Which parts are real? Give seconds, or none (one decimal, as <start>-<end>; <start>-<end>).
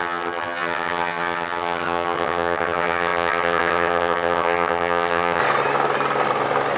5.4-6.8